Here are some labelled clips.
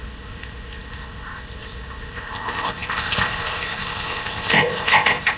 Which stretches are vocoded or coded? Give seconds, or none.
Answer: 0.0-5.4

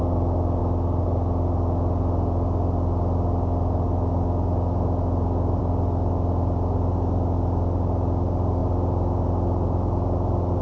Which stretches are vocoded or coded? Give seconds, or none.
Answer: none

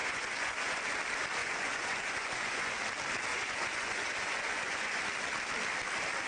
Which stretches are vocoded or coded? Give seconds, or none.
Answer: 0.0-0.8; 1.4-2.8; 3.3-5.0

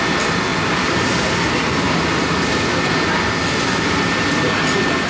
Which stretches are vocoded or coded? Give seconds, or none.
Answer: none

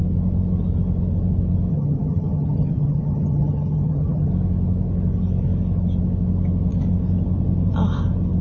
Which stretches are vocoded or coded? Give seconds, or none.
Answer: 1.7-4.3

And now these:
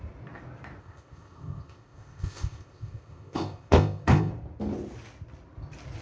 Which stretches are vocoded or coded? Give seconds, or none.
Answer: 0.8-4.3